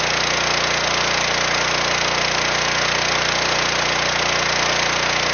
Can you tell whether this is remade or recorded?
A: recorded